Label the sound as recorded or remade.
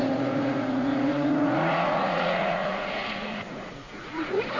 remade